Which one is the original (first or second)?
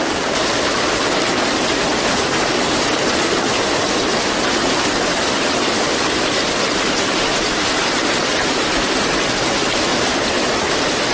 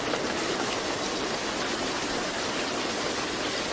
second